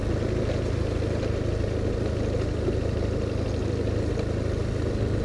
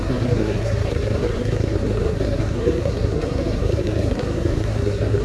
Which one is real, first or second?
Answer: first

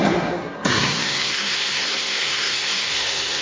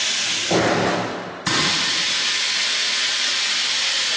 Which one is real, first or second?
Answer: second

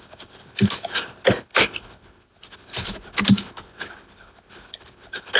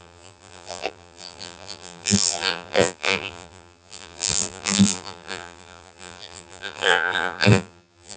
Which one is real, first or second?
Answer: first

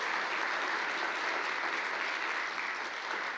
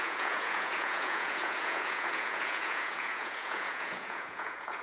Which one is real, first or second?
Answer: first